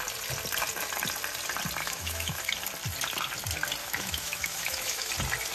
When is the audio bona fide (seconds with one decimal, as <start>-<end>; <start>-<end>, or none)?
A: 0.0-1.8; 2.4-3.8; 5.1-5.5